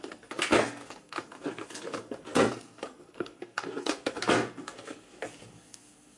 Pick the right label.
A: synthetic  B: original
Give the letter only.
A